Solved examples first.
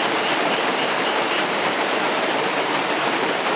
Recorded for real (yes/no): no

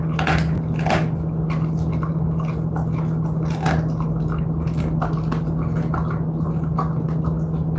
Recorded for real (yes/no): yes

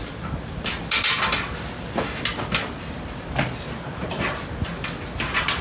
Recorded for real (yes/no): yes